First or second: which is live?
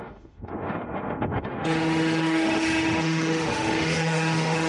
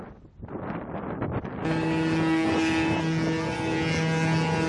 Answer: second